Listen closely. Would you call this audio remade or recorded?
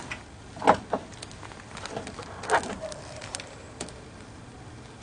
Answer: recorded